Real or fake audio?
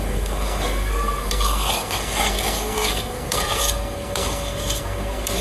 fake